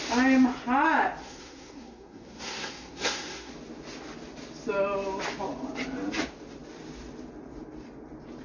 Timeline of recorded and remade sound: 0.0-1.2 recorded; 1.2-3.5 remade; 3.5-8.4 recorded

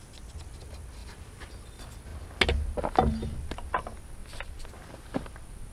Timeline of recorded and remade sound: 0.0-1.0 recorded; 1.0-1.5 remade; 1.5-4.2 recorded; 4.2-5.3 remade; 5.3-5.7 recorded

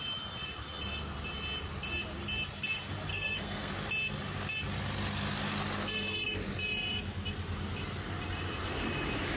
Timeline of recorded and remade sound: 0.0-3.1 recorded; 3.1-3.7 remade; 3.7-9.4 recorded

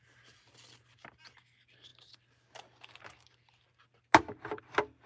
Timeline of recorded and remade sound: 0.0-5.1 recorded